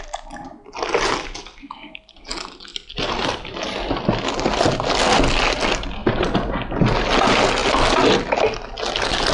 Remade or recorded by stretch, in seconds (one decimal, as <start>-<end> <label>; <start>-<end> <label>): 0.0-9.3 recorded